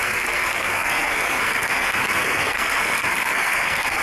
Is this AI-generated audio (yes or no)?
yes